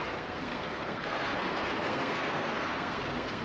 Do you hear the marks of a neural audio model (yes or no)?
yes